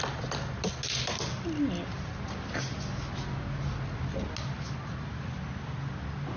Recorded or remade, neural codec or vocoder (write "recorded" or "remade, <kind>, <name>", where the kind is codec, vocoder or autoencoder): recorded